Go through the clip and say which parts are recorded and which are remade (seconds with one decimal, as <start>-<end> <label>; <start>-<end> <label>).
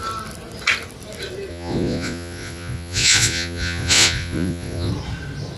0.0-1.5 recorded; 1.5-4.9 remade; 4.9-5.6 recorded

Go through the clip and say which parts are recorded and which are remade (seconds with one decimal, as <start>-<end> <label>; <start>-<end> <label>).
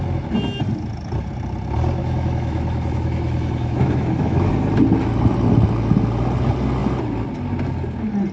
0.0-2.0 recorded; 2.0-4.5 remade; 4.5-8.3 recorded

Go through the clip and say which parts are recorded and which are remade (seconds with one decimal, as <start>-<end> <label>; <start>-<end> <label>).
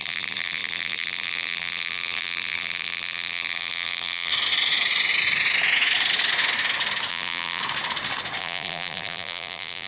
0.0-4.3 remade; 4.3-7.1 recorded; 7.1-7.6 remade; 7.6-8.4 recorded; 8.4-9.9 remade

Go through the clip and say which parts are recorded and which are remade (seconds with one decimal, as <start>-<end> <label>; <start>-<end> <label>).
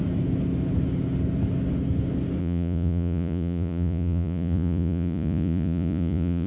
0.0-2.4 recorded; 2.4-6.5 remade